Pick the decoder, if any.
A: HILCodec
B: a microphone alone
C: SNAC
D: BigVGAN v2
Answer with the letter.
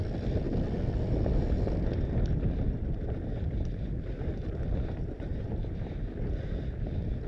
B